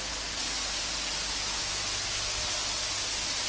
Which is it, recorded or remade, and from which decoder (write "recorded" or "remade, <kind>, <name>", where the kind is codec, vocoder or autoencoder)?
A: recorded